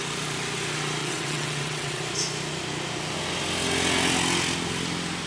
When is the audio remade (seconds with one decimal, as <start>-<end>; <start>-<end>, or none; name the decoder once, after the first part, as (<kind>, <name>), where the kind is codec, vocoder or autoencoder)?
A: 1.0-2.0 (vocoder, WaveNeXt)